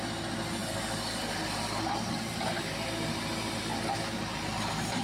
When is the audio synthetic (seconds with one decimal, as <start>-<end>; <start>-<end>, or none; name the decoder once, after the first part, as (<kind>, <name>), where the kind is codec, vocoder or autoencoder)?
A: none